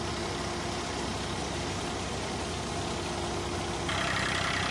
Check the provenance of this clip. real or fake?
real